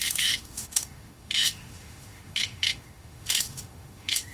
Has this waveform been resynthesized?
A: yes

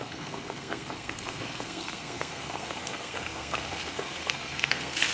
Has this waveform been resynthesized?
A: yes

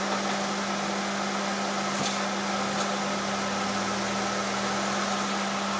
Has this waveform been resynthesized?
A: no